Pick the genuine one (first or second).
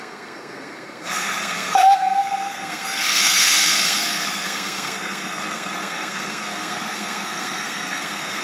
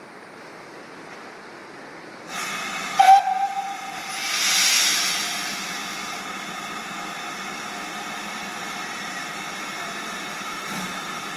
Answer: second